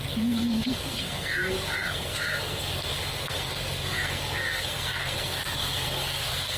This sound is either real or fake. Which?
fake